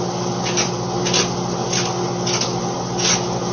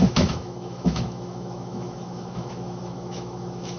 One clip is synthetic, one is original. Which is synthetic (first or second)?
second